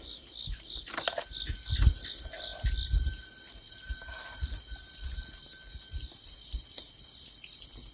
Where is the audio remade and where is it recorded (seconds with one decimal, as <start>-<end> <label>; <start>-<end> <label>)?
0.0-7.9 recorded

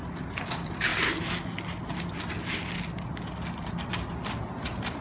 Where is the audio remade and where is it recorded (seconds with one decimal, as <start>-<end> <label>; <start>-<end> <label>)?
0.0-5.0 recorded

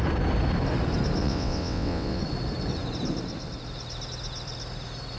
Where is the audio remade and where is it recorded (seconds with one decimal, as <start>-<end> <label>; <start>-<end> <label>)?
0.0-1.2 recorded; 1.2-2.2 remade; 2.2-5.2 recorded

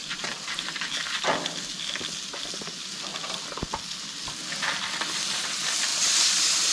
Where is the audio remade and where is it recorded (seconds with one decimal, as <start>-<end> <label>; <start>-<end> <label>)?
0.0-0.9 remade; 0.9-5.9 recorded; 5.9-6.7 remade

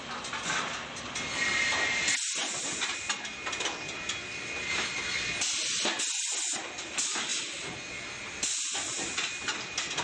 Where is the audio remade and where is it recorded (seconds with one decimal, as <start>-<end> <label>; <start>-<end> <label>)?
0.0-10.0 recorded

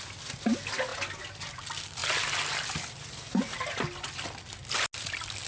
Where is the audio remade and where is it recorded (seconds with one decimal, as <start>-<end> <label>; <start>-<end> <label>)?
0.0-5.5 recorded